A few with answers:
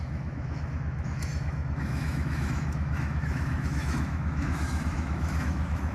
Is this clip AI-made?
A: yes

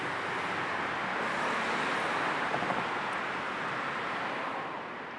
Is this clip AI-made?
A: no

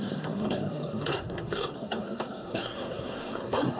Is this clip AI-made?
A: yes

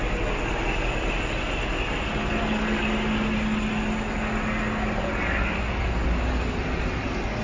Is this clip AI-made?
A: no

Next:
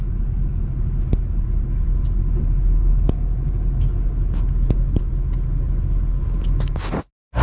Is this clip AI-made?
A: no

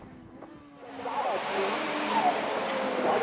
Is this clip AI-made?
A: no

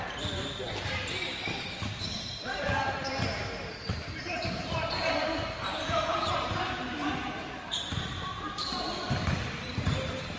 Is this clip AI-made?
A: yes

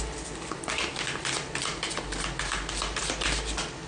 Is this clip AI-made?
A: no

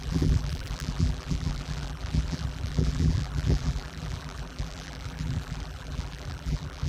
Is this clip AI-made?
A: yes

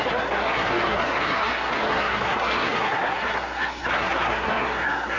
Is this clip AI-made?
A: yes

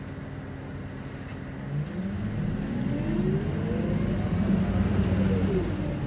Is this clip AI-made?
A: no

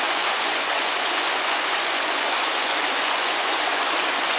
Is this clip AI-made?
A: yes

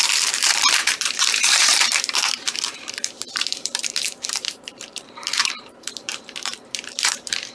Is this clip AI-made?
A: yes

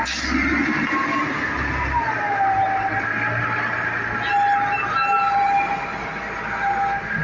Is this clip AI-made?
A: no